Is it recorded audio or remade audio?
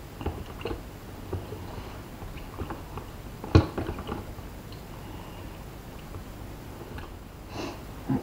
recorded